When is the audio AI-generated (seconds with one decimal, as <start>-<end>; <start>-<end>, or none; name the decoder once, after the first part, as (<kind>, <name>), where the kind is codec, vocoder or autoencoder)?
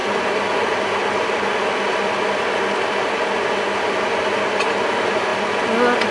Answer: none